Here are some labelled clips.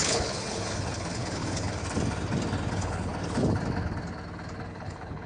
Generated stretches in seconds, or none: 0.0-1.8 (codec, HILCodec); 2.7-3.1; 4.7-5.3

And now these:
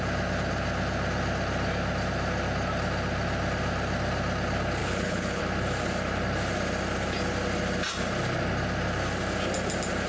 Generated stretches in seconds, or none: 4.8-5.4 (codec, HILCodec)